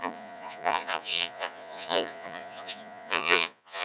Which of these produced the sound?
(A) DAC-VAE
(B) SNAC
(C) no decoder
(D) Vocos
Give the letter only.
D